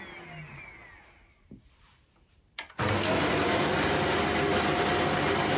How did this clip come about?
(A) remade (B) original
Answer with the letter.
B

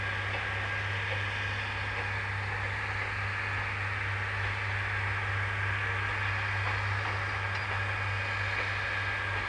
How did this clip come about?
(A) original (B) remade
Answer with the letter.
A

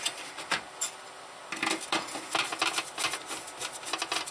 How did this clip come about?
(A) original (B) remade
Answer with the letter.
A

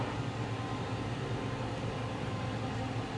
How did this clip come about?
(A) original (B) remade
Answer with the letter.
A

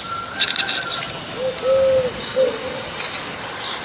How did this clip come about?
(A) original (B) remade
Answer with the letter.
A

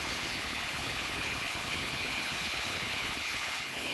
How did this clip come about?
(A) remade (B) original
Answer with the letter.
A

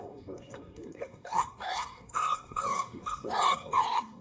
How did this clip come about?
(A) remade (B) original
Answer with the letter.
A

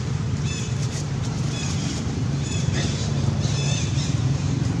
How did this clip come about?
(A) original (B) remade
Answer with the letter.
B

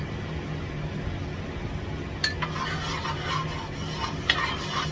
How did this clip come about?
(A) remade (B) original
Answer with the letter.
B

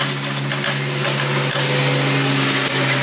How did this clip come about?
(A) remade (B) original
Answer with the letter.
B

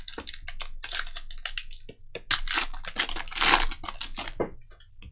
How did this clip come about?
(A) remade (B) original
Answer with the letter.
B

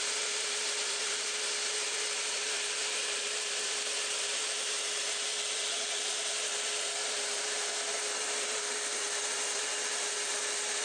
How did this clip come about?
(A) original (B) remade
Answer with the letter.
B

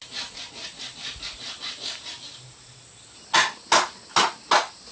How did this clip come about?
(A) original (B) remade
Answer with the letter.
A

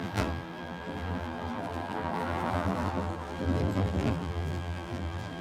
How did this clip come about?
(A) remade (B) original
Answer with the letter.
A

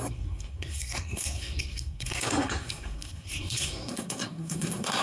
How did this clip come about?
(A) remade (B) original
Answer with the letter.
A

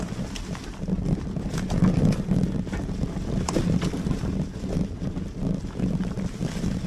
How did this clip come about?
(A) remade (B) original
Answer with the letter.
B